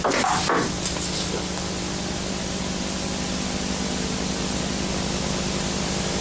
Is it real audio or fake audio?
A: real